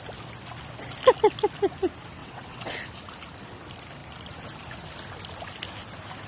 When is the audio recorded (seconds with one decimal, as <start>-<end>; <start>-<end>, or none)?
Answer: 0.0-2.2; 2.7-6.3